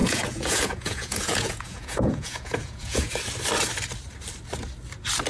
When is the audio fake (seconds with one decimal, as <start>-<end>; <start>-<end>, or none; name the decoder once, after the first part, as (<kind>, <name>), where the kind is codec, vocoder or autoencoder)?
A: 0.0-3.2 (vocoder, Vocos)